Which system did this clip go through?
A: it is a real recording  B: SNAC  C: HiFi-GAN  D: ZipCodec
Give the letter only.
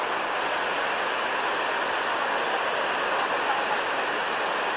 A